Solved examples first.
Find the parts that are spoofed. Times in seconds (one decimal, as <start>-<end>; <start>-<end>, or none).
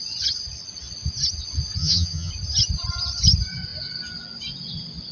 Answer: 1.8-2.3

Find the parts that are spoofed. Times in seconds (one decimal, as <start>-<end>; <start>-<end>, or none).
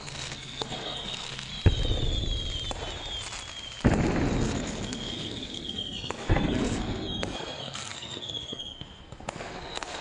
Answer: 0.0-1.5; 4.4-10.0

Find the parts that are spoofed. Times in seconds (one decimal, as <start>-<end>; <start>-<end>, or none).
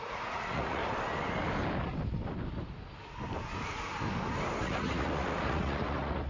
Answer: 0.0-0.8; 4.6-6.3